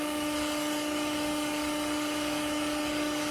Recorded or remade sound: remade